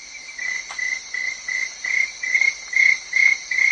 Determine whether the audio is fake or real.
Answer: real